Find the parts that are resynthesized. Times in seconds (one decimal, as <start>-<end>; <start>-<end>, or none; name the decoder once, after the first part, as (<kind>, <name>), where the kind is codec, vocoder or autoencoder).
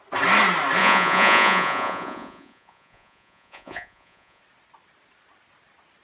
0.8-4.4 (vocoder, Vocos)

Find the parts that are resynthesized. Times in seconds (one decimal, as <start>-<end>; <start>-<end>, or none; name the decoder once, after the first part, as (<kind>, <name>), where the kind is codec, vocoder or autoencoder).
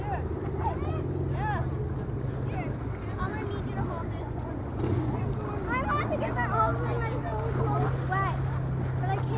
4.2-5.2 (vocoder, Vocos)